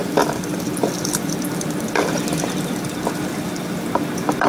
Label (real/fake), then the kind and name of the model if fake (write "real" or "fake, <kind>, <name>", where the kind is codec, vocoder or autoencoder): fake, vocoder, BigVGAN v2